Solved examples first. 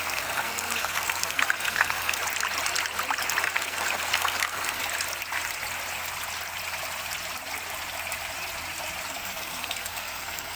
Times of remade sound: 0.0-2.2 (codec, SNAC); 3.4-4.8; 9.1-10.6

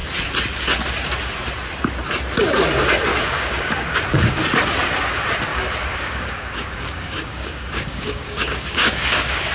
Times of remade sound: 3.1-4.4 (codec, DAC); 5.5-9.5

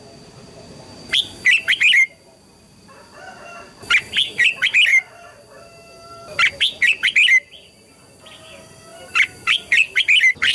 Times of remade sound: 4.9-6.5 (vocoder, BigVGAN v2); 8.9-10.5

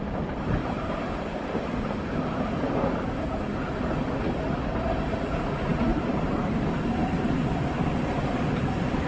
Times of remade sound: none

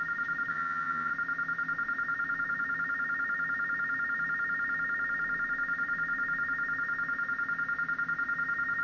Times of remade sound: 0.5-1.1 (vocoder, HiFi-GAN)

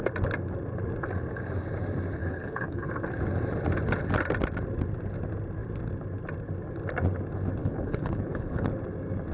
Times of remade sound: 2.2-2.9 (codec, HILCodec); 7.6-8.7